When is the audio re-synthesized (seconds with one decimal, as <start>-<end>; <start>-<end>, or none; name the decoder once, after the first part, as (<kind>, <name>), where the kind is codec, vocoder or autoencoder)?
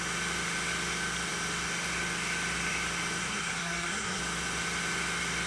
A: 3.2-4.2 (codec, SNAC)